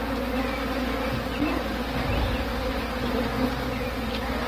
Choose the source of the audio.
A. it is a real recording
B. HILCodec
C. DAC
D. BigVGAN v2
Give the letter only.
A